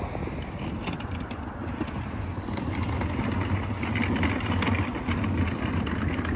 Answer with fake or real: real